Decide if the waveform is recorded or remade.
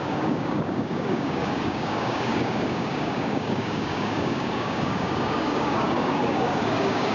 remade